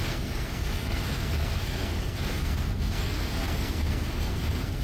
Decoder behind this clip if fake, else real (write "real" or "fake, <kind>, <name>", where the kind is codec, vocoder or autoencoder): fake, codec, SNAC